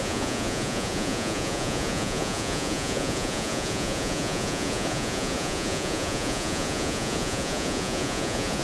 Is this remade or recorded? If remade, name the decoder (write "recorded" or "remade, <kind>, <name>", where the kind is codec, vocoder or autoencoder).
remade, vocoder, Vocos